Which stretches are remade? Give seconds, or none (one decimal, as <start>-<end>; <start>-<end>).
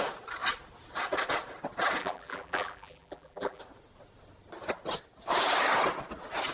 2.0-3.6